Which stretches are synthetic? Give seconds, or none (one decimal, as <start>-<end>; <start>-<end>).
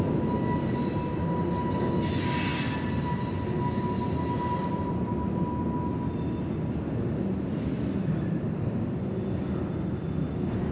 none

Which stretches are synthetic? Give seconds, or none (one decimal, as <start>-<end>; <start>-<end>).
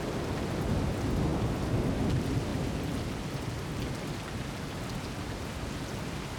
none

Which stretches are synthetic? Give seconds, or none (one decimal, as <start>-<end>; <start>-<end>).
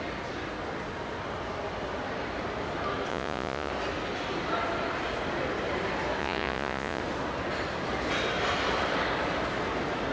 3.1-3.7; 6.2-7.0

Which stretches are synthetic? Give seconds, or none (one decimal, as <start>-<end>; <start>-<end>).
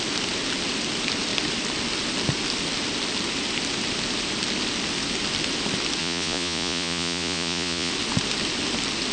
6.0-7.9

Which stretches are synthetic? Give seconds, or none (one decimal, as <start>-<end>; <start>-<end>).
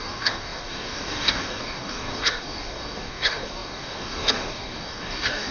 0.0-5.5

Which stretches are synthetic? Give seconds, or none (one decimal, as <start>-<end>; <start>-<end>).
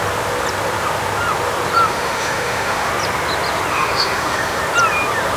1.9-2.9; 3.7-4.6